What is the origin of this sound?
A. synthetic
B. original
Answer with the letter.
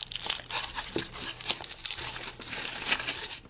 B